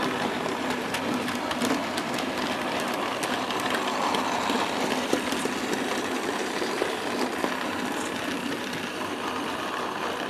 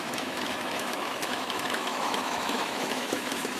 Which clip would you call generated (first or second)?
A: second